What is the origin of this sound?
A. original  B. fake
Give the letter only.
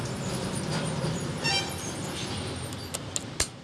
A